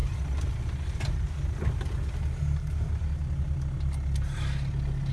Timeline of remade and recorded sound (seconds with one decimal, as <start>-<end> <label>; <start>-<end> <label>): 0.0-5.1 recorded